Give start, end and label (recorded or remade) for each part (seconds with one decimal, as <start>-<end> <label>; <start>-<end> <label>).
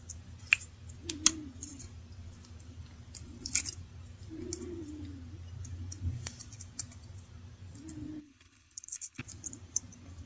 0.0-8.2 recorded; 8.2-9.2 remade; 9.2-10.3 recorded